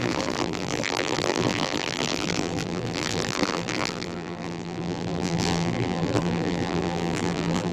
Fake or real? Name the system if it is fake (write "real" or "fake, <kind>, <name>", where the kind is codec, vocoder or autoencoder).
fake, vocoder, BigVGAN v2